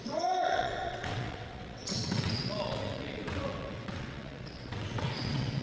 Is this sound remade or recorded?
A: remade